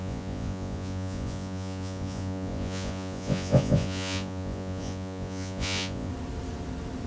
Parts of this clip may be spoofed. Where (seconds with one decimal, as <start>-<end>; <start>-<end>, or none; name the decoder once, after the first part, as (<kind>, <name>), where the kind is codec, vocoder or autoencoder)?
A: 0.0-6.1 (vocoder, Vocos)

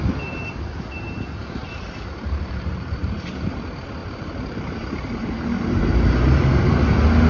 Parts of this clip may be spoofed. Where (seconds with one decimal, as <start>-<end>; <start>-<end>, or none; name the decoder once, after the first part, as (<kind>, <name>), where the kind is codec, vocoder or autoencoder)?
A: 1.6-3.3 (vocoder, BigVGAN v2); 4.0-6.7

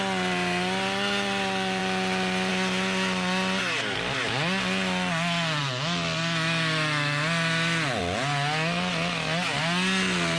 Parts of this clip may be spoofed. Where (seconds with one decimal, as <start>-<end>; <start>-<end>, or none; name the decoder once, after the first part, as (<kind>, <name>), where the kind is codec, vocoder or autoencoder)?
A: none

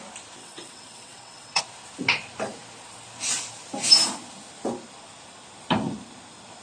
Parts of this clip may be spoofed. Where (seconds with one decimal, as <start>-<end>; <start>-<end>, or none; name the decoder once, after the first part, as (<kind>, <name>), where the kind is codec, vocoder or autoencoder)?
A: 0.4-1.6 (vocoder, WaveNeXt)

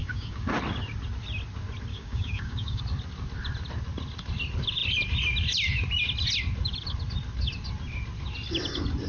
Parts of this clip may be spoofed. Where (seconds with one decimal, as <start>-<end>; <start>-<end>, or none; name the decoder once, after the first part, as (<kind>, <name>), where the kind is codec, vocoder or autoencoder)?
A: 0.0-0.5 (codec, DAC); 1.9-2.8